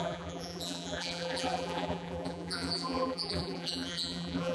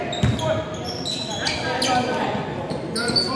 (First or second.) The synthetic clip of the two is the first